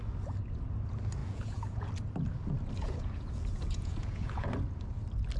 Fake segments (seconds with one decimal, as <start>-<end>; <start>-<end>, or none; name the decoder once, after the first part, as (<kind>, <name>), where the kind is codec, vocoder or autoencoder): 1.2-1.9 (vocoder, Vocos); 2.8-4.5